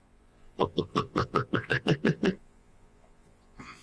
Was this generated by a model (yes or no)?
yes